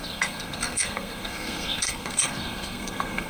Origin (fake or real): fake